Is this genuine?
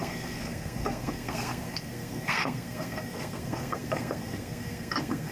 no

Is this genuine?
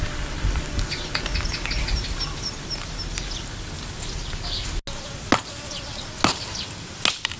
yes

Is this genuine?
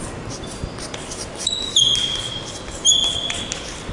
yes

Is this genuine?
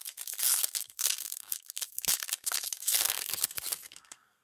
no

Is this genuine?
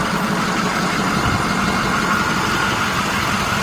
yes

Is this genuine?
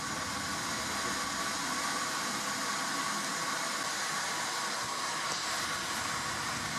yes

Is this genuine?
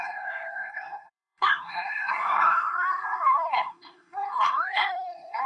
no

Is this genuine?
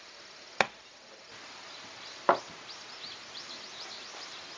yes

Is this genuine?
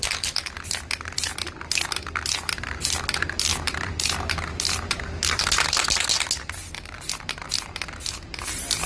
yes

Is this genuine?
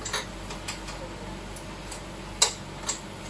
yes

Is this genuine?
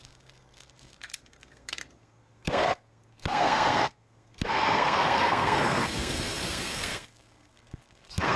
no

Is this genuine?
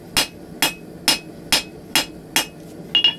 yes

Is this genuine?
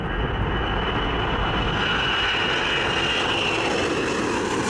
yes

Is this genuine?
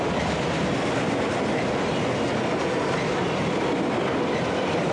yes